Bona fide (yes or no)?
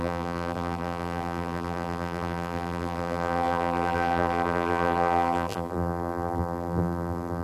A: no